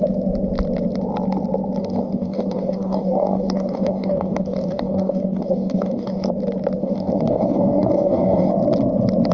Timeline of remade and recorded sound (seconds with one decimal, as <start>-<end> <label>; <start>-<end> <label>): 0.0-1.8 recorded; 1.8-6.3 remade; 6.3-6.8 recorded; 6.8-8.5 remade; 8.5-9.3 recorded